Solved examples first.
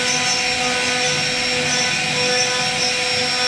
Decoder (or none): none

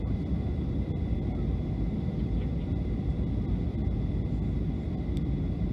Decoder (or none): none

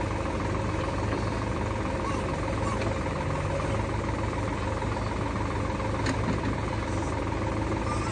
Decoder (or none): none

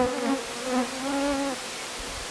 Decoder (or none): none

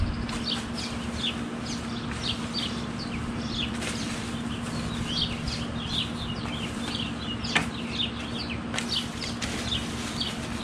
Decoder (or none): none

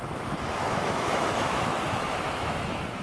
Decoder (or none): autoencoder, DAC-VAE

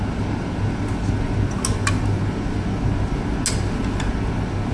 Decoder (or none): none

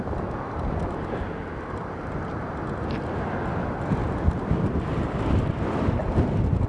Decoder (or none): none